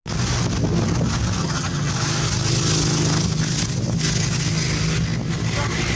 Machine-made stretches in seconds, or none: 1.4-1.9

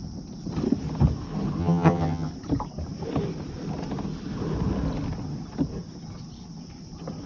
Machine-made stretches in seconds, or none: 1.6-2.3

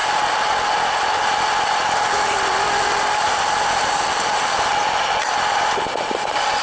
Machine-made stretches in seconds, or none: none